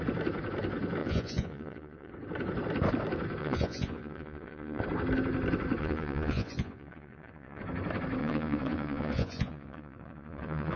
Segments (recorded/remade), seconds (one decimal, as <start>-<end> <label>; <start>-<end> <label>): 0.0-1.0 recorded; 1.0-2.1 remade; 2.1-3.4 recorded; 3.4-4.8 remade; 4.8-5.8 recorded; 5.8-7.6 remade; 7.6-8.2 recorded; 8.2-10.8 remade